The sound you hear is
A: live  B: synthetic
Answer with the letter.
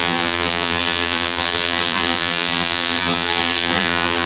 B